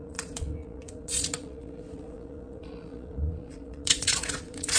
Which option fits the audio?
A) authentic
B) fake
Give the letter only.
B